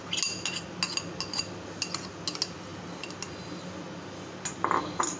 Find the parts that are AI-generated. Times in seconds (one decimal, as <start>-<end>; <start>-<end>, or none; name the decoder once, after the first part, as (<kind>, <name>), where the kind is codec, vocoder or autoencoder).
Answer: none